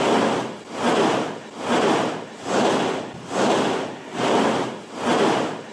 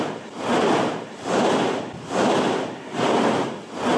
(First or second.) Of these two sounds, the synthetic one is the second